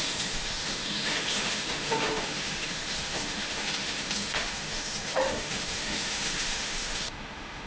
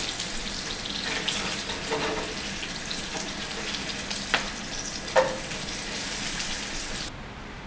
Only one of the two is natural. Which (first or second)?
second